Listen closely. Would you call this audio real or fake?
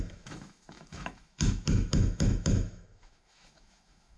fake